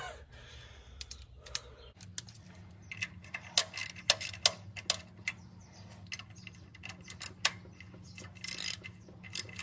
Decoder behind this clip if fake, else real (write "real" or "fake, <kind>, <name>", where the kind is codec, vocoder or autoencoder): real